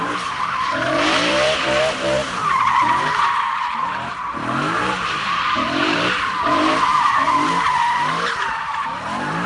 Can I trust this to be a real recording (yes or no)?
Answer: no